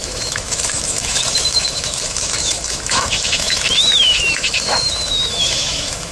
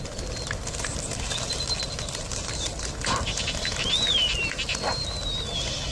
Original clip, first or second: second